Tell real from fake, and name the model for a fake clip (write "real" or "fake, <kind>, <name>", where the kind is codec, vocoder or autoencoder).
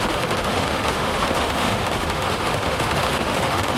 fake, autoencoder, DAC-VAE